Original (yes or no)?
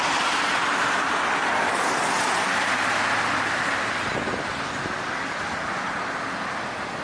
yes